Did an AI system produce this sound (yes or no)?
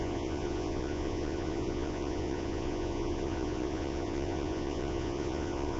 yes